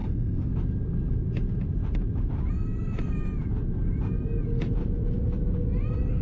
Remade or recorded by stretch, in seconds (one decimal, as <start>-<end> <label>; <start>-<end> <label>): 0.0-0.5 remade; 0.5-6.2 recorded

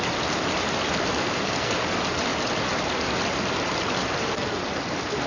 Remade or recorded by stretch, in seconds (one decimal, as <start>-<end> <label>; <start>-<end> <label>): 0.0-1.1 recorded; 1.1-1.7 remade; 1.7-5.3 recorded

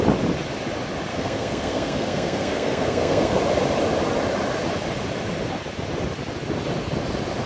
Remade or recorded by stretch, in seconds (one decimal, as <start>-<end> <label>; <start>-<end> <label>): 0.0-1.1 recorded; 1.1-3.4 remade; 3.4-7.5 recorded

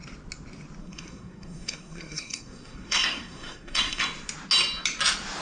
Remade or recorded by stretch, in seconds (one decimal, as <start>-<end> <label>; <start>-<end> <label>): 0.0-0.8 recorded; 0.8-4.0 remade; 4.0-5.4 recorded

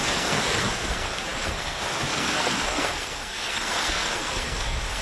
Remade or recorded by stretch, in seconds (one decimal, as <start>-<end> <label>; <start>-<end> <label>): 0.0-5.0 remade

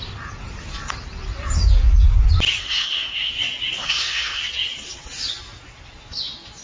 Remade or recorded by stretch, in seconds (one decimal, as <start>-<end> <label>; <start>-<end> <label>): 0.0-2.6 recorded; 2.6-3.3 remade; 3.3-3.8 recorded; 3.8-4.4 remade; 4.4-6.6 recorded

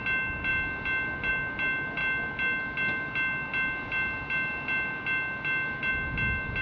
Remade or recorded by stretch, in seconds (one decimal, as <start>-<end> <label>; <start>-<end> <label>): 0.0-6.6 recorded

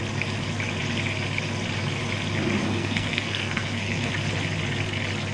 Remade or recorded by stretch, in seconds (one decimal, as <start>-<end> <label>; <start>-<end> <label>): 0.0-2.6 recorded; 2.6-4.1 remade; 4.1-5.3 recorded